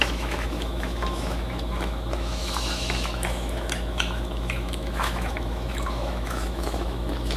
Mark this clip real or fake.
fake